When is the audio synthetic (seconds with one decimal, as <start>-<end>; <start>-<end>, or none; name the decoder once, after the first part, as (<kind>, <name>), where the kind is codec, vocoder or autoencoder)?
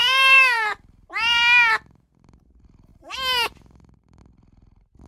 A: 0.0-1.4 (vocoder, BigVGAN v2); 2.9-4.2